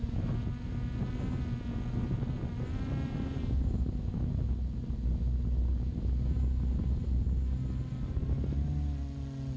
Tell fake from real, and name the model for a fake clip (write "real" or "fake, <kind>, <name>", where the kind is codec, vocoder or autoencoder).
real